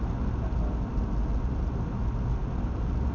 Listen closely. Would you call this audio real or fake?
real